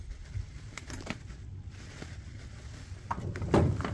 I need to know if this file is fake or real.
fake